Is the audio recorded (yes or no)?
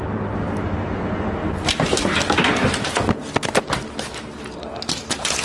yes